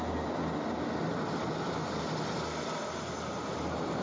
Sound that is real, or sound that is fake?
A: real